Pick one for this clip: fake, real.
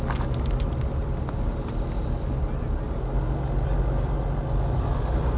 real